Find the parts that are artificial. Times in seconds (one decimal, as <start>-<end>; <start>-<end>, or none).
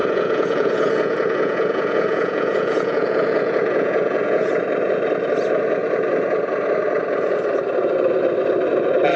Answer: 0.0-4.5